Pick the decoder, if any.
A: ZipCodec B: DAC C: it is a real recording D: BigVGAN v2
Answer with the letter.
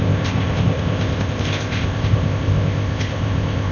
A